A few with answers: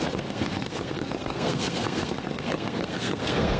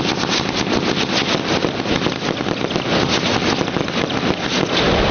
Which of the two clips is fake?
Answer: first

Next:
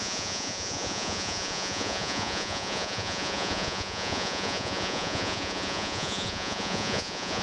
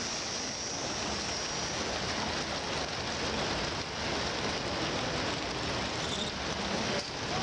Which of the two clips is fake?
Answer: first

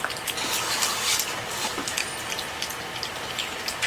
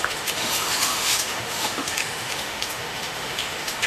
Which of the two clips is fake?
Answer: second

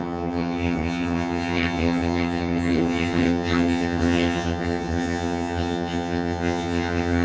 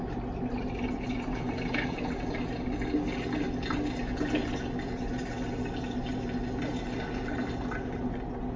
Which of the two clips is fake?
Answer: first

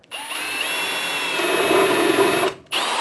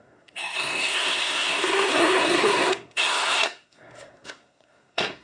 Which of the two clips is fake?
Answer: second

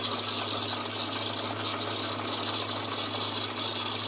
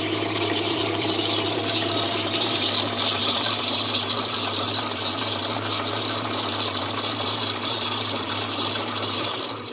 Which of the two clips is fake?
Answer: second